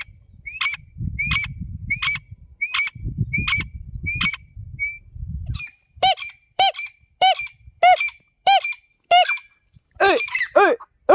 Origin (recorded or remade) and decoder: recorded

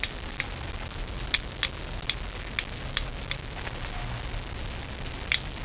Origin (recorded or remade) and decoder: recorded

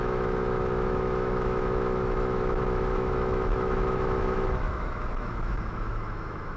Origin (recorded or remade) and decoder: remade, autoencoder, DAC-VAE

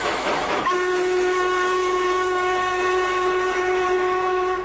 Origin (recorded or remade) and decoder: remade, autoencoder, DAC-VAE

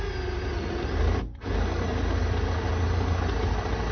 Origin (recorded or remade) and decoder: recorded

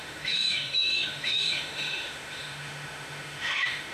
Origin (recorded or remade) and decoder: remade, autoencoder, DAC-VAE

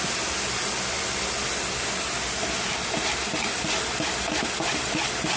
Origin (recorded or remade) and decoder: recorded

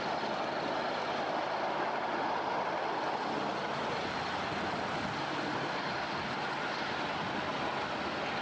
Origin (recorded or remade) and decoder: recorded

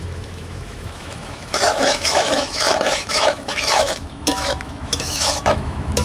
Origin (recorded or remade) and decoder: remade, autoencoder, DAC-VAE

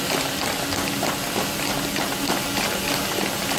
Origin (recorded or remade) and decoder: recorded